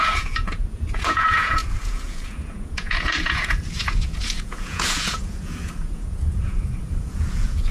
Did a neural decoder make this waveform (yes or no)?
yes